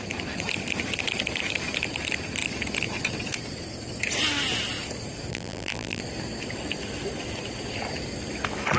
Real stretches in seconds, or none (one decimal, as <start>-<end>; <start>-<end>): 0.0-5.3; 6.0-8.8